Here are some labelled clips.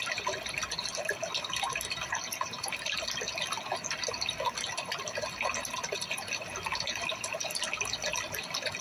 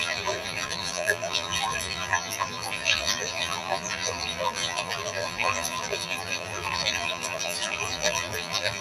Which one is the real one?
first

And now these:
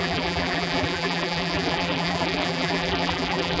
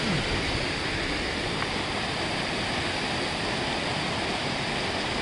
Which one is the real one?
second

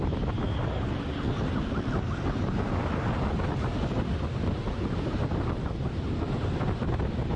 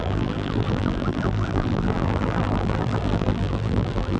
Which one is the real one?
first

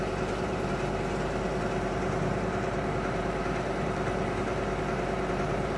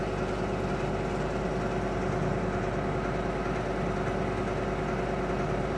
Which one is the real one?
second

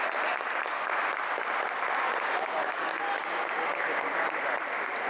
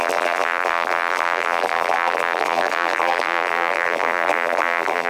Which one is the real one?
first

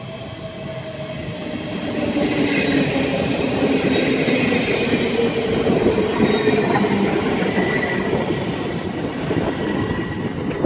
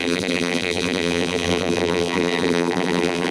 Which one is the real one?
first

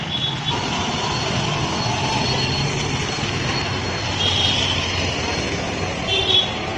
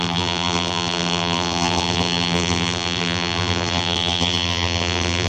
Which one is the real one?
first